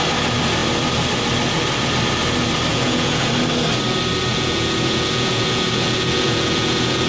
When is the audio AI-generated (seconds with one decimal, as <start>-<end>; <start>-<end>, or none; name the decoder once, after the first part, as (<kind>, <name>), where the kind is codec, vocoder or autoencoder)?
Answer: 2.7-3.3 (vocoder, Vocos); 4.3-7.1